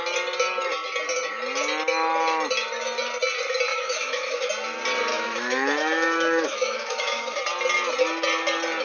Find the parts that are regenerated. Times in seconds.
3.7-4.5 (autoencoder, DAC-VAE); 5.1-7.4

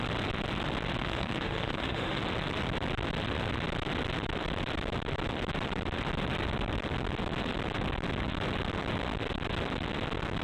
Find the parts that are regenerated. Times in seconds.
1.0-2.2 (autoencoder, DAC-VAE)

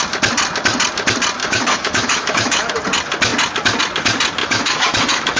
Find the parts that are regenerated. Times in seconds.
1.4-2.7 (autoencoder, DAC-VAE); 4.4-5.4

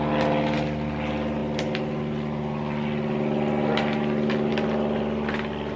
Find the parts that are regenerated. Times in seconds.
none

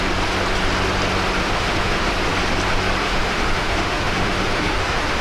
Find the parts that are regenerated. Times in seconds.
1.4-2.1 (autoencoder, DAC-VAE); 3.0-5.2

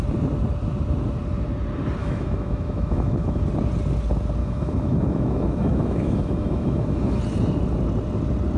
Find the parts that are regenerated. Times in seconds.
2.0-3.4 (autoencoder, DAC-VAE); 4.4-7.2

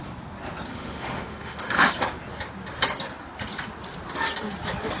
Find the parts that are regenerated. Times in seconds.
0.7-1.9 (autoencoder, DAC-VAE)

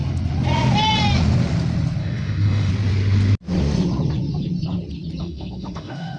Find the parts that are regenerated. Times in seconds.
2.0-2.7 (autoencoder, DAC-VAE); 5.2-6.2